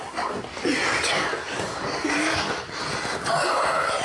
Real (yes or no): yes